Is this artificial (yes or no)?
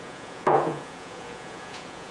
yes